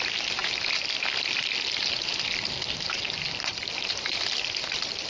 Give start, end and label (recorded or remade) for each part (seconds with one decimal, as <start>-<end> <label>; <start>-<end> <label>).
0.0-5.1 recorded